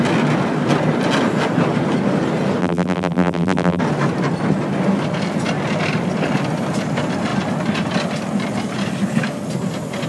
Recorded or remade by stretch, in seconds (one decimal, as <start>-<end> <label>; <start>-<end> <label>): 0.0-2.6 recorded; 2.6-3.8 remade; 3.8-10.1 recorded